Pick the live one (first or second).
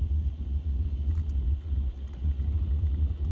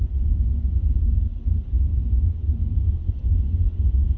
second